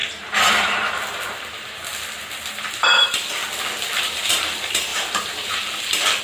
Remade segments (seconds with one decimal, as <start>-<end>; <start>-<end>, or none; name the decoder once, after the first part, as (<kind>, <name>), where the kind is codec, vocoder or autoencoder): 0.0-1.9 (vocoder, BigVGAN v2); 2.5-3.4; 4.0-6.2